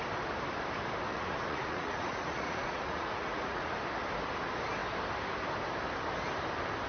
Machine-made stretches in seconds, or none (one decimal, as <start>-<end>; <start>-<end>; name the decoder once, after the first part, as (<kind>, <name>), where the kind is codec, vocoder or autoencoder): 1.1-3.7 (vocoder, Vocos)